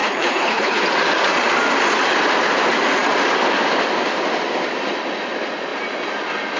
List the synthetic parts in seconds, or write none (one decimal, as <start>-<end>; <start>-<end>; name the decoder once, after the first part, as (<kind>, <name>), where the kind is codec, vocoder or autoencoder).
0.0-0.8 (codec, HILCodec)